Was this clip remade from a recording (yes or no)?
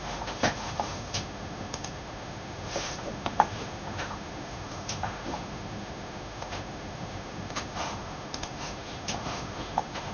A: yes